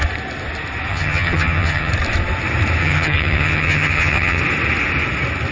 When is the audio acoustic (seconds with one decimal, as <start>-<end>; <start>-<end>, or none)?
0.0-0.9; 1.9-2.8; 4.4-5.5